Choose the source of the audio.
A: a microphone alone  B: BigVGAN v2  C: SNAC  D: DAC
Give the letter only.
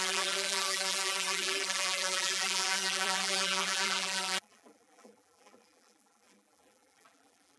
B